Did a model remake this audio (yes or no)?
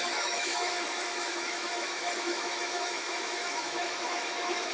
yes